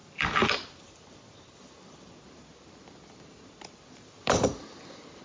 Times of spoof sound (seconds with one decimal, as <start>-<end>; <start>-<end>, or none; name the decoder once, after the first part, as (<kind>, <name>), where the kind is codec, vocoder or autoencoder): 0.0-2.1 (vocoder, BigVGAN v2)